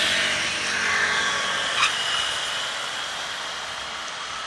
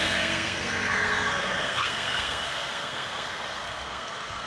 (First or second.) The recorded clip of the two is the first